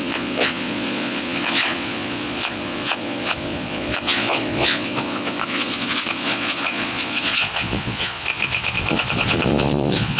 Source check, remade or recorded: remade